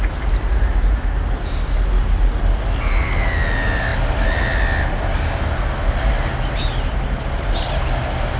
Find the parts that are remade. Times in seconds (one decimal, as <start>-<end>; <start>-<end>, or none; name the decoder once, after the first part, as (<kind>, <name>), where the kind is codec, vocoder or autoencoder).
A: none